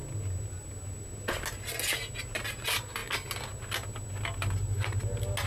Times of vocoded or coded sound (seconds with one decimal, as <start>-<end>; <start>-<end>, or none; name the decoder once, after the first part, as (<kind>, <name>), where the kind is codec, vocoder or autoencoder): none